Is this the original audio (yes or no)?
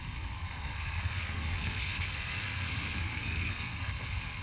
no